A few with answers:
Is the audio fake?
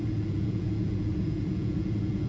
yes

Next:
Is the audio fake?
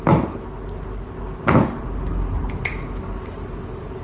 no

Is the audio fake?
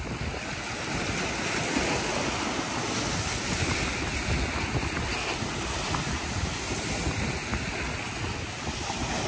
no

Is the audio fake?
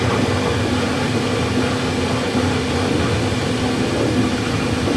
no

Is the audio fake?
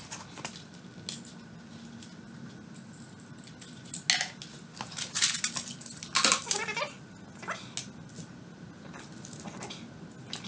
no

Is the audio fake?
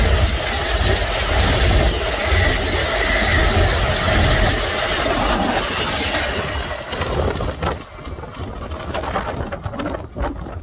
no